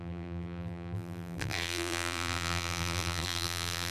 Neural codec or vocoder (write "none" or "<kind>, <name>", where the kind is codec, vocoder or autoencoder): vocoder, BigVGAN v2